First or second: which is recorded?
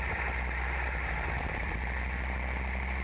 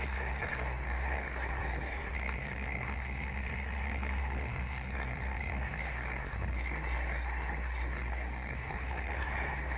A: first